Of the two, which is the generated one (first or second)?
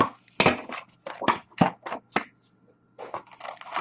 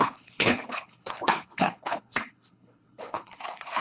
second